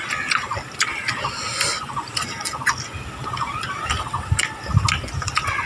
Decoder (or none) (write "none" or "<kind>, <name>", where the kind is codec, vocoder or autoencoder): none